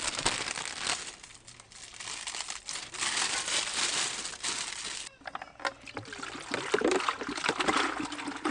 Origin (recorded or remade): recorded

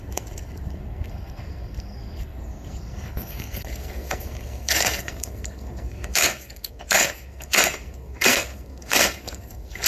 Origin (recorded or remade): remade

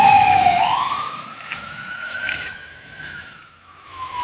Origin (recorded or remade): remade